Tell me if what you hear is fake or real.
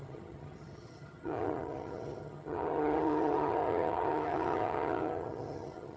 fake